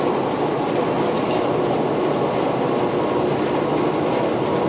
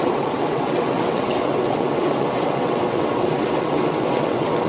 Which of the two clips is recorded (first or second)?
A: first